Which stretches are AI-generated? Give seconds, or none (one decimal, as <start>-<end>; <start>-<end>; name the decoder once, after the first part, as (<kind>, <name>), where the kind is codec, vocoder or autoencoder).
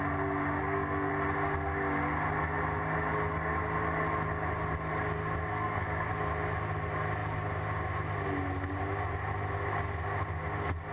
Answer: 0.6-1.1 (codec, SNAC); 5.5-6.1